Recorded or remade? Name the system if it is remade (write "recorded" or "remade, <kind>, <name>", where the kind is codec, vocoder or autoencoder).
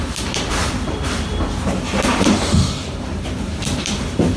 remade, vocoder, BigVGAN v2